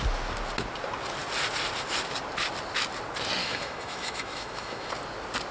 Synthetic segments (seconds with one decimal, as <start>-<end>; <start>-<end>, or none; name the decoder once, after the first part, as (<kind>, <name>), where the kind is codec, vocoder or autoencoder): 3.4-4.9 (autoencoder, DAC-VAE)